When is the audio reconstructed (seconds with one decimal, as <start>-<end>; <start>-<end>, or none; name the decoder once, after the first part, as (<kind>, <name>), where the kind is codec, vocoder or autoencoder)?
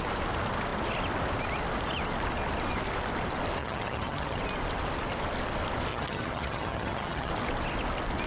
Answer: 3.6-4.4 (vocoder, HiFi-GAN); 5.9-7.3